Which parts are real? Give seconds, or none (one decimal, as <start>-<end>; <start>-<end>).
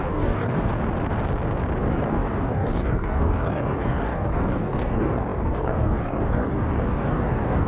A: 0.7-1.8